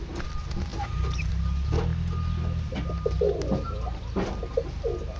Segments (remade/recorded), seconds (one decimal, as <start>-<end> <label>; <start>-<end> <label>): 0.0-0.7 recorded; 0.7-1.3 remade; 1.3-5.2 recorded